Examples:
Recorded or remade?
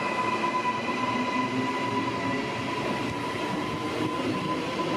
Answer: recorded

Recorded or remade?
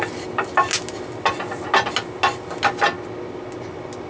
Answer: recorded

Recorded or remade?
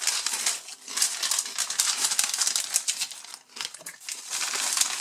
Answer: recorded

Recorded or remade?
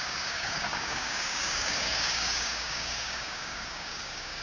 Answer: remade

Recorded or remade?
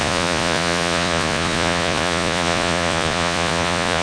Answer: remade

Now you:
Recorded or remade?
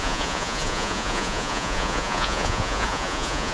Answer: remade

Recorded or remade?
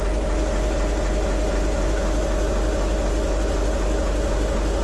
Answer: recorded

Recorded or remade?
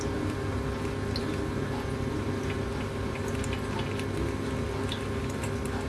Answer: recorded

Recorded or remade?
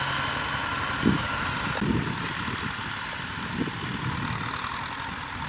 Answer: recorded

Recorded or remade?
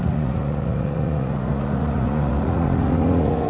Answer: remade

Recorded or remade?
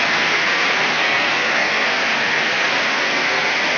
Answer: remade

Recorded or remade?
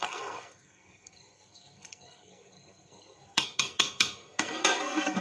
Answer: remade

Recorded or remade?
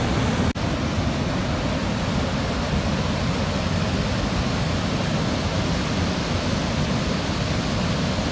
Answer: recorded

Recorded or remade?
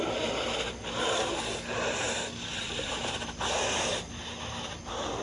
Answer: remade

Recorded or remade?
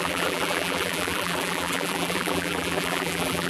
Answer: remade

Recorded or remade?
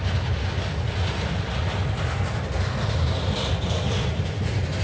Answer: recorded